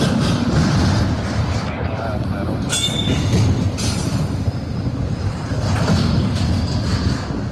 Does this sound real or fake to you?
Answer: real